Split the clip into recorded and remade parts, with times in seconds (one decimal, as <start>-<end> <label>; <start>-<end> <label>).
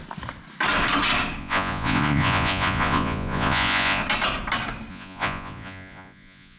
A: 0.0-1.4 recorded; 1.4-4.0 remade; 4.0-4.9 recorded; 4.9-6.6 remade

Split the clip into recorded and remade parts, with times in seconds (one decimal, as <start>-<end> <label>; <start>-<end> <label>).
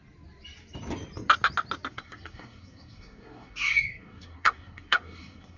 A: 0.0-1.9 recorded; 1.9-5.6 remade